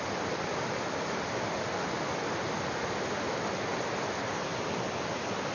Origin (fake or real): real